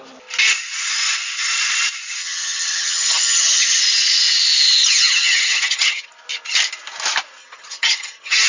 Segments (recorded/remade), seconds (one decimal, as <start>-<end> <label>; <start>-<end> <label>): 0.0-2.2 recorded; 2.2-3.8 remade; 3.8-4.9 recorded; 4.9-6.1 remade; 6.1-7.4 recorded; 7.4-8.5 remade